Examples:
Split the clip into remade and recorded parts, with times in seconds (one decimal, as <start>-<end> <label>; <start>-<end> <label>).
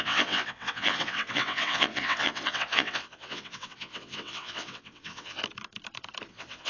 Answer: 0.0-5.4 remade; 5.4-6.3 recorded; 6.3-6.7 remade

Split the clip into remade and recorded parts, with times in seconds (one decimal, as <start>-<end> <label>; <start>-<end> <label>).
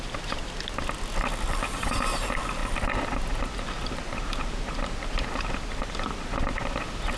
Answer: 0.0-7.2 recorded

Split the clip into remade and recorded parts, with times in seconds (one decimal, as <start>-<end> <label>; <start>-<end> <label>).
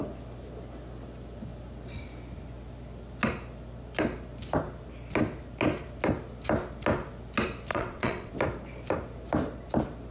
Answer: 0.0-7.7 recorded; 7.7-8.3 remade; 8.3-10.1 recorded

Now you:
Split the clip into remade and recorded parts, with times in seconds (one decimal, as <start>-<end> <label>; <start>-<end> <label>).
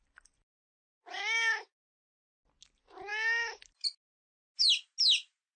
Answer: 0.0-5.6 recorded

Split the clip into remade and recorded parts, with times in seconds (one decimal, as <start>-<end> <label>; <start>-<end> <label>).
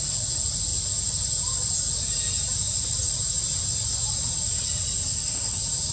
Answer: 0.0-5.9 recorded